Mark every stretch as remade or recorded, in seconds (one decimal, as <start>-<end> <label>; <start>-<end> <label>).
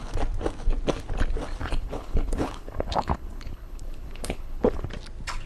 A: 0.0-1.6 recorded; 1.6-4.9 remade; 4.9-5.5 recorded